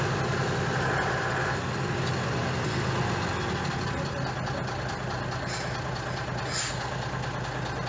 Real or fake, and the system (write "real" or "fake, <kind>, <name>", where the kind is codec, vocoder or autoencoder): real